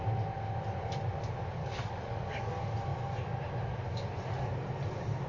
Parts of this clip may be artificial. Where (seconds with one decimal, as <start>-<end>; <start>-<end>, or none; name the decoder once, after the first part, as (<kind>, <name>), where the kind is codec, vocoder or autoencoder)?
1.6-2.5 (codec, DAC)